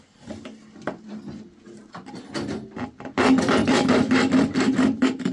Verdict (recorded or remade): recorded